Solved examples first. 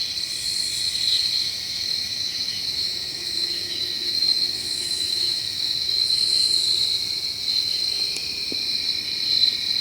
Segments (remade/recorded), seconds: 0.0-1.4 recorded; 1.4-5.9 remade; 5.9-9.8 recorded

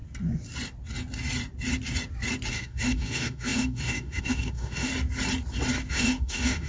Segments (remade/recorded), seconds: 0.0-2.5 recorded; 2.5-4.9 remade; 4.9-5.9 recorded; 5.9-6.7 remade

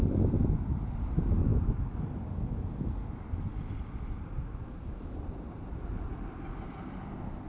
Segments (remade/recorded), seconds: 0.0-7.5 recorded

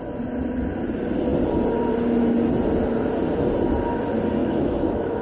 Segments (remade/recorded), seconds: 0.0-4.4 recorded; 4.4-5.2 remade